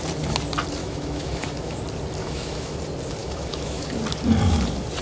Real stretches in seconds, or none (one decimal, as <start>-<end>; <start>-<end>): 0.0-0.8; 1.8-2.2; 2.8-3.2; 3.9-5.0